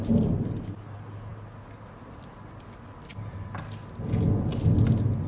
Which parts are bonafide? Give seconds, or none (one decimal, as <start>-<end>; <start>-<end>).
0.0-5.3